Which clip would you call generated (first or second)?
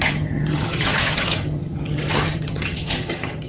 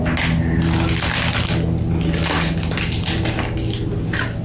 first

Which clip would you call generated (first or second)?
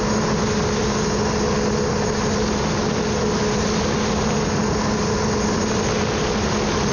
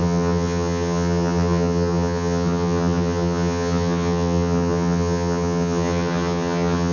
second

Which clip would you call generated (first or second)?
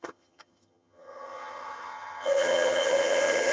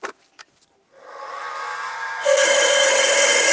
first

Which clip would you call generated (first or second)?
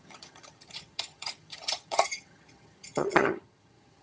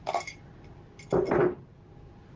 first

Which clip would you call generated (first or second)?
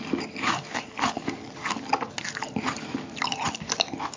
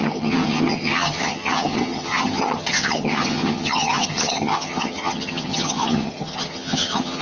second